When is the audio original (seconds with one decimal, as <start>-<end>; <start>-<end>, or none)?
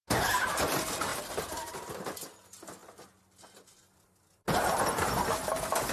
0.0-5.9